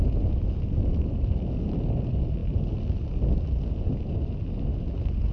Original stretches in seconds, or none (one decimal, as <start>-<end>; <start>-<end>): 0.0-5.3